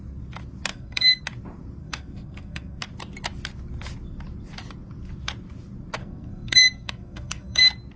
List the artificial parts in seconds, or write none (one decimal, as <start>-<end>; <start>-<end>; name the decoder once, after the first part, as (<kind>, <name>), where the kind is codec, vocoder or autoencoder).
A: 0.7-1.2 (codec, SNAC); 1.8-2.8; 6.0-7.6